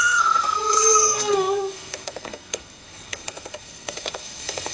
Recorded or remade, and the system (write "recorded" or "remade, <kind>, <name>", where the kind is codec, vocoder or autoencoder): remade, codec, SNAC